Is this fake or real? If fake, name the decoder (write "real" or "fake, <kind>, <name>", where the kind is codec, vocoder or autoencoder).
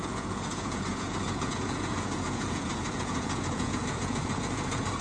fake, vocoder, Vocos